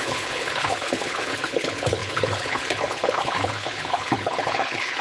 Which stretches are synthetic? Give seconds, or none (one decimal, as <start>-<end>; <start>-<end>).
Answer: 0.0-5.0